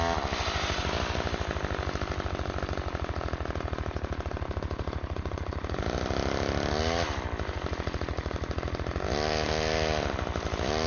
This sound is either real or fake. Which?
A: real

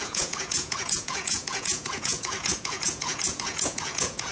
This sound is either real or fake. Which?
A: fake